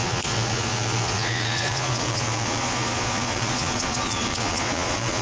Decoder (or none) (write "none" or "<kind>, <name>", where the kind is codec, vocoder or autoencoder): vocoder, Vocos